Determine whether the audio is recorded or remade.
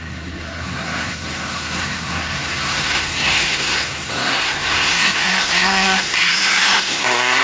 remade